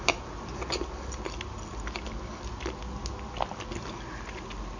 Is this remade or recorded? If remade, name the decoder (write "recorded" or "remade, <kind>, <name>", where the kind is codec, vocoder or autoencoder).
recorded